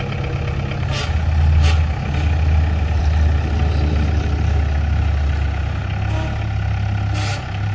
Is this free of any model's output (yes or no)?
yes